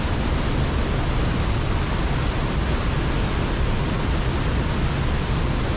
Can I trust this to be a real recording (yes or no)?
yes